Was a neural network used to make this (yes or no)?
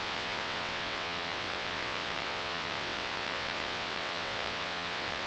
yes